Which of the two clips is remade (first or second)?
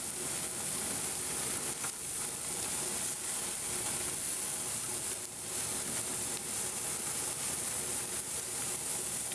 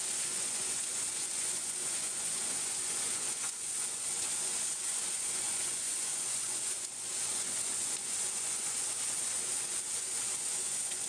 second